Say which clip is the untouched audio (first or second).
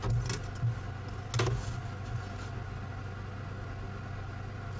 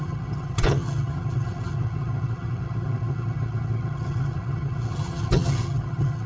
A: first